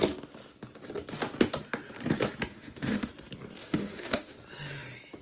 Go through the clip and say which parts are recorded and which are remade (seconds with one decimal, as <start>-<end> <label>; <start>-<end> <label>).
0.0-2.5 recorded; 2.5-3.1 remade; 3.1-3.6 recorded; 3.6-4.3 remade; 4.3-5.2 recorded